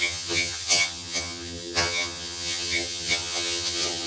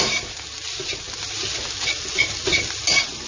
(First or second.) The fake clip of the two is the first